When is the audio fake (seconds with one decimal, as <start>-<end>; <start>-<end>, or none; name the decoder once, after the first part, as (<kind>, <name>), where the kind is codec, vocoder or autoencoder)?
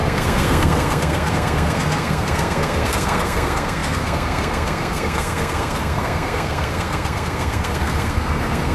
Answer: 0.0-8.7 (codec, SNAC)